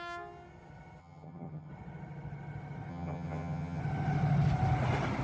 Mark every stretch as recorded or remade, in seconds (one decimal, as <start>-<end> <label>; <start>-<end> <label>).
0.0-1.0 recorded; 1.0-1.7 remade; 1.7-2.9 recorded; 2.9-3.8 remade; 3.8-5.2 recorded